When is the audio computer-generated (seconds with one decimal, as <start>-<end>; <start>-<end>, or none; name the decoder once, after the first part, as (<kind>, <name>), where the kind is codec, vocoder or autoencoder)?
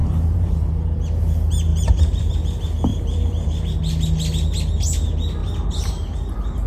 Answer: 0.0-0.7 (vocoder, BigVGAN v2); 1.7-2.3; 2.9-3.5; 5.4-6.7